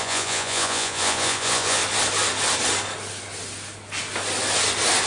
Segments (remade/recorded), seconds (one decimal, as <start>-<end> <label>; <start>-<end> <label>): 0.0-1.8 remade; 1.8-5.1 recorded